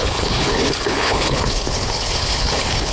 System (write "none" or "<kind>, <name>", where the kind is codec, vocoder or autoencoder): codec, HILCodec